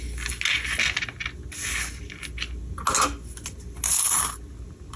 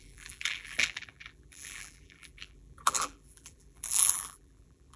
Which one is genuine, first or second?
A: first